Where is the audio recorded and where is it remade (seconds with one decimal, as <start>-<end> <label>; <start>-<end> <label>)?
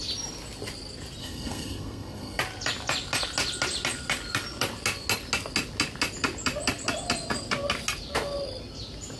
0.0-1.2 recorded; 1.2-2.4 remade; 2.4-9.2 recorded